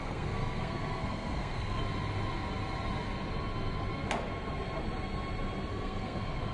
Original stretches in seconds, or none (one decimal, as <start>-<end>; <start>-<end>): 1.8-5.7